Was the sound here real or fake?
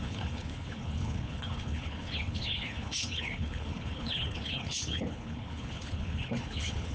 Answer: fake